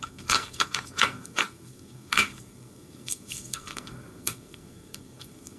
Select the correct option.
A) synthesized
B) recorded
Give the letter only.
A